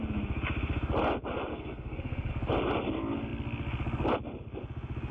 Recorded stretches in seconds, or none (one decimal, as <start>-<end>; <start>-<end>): 0.0-1.5; 2.3-5.1